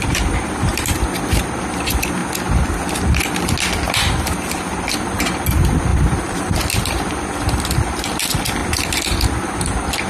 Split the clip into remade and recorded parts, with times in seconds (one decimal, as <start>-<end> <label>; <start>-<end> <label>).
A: 0.0-2.2 remade; 2.2-3.9 recorded; 3.9-8.6 remade; 8.6-9.4 recorded; 9.4-10.1 remade